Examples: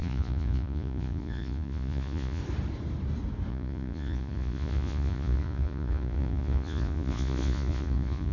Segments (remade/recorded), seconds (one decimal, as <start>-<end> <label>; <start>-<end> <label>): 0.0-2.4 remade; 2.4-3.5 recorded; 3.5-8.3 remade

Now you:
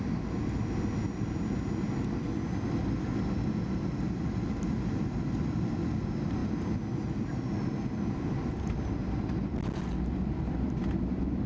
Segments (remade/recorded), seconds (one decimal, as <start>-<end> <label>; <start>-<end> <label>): 0.0-11.5 recorded

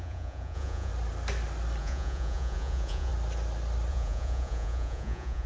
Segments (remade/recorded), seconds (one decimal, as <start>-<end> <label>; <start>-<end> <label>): 0.0-0.9 remade; 0.9-1.8 recorded; 1.8-3.1 remade; 3.1-3.9 recorded; 3.9-5.5 remade

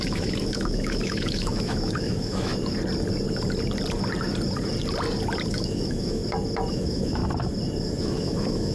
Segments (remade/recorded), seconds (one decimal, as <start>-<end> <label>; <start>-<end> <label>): 0.0-2.5 remade; 2.5-5.5 recorded; 5.5-6.2 remade; 6.2-6.7 recorded; 6.7-7.2 remade; 7.2-8.0 recorded; 8.0-8.7 remade

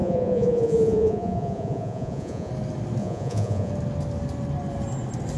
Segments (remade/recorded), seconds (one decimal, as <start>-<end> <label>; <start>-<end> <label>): 0.0-2.5 remade; 2.5-3.0 recorded; 3.0-3.7 remade; 3.7-5.4 recorded

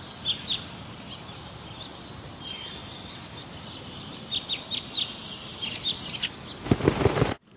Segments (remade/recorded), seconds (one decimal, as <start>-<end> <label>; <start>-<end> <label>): 0.0-7.6 recorded